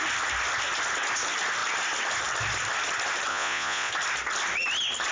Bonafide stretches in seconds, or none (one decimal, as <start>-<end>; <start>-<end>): 0.0-3.3; 3.9-5.1